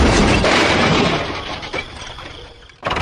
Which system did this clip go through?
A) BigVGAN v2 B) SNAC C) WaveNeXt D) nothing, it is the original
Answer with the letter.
A